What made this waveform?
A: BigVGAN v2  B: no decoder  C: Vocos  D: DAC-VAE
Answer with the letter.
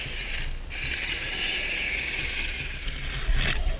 B